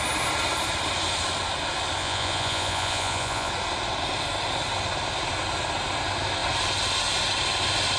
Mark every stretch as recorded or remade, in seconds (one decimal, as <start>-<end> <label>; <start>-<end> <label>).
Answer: 0.0-2.0 recorded; 2.0-3.5 remade; 3.5-8.0 recorded